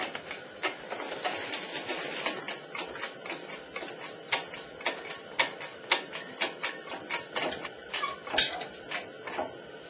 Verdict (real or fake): real